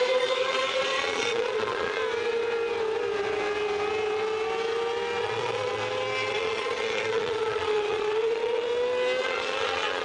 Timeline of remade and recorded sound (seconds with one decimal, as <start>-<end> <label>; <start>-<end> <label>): 0.0-2.0 remade; 2.0-5.2 recorded; 5.2-5.8 remade; 5.8-6.3 recorded; 6.3-8.7 remade; 8.7-9.2 recorded; 9.2-10.0 remade